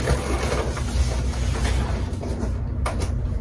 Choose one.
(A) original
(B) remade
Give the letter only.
A